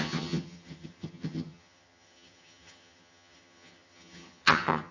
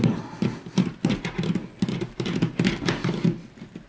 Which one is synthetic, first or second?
first